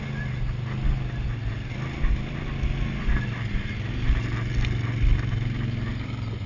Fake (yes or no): no